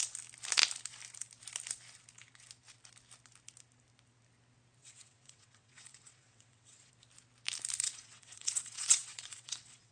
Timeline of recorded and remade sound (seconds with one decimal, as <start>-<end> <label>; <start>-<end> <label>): 0.0-4.8 recorded; 4.8-6.9 remade; 6.9-7.8 recorded; 7.8-9.9 remade